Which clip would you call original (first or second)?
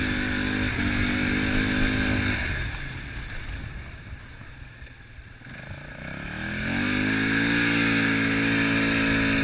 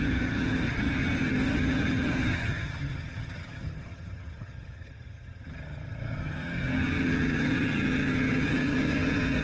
first